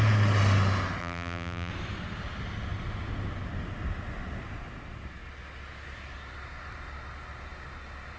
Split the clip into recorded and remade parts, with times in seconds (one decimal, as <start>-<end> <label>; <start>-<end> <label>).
0.0-1.0 recorded; 1.0-1.7 remade; 1.7-8.2 recorded